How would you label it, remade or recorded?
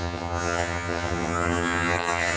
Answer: remade